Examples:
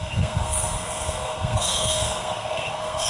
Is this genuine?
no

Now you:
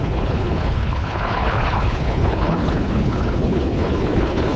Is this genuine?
no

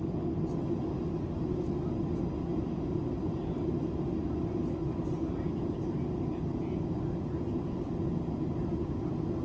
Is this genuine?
yes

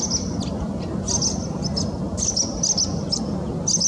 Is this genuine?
yes